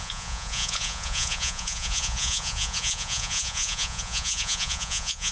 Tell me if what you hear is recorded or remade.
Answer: remade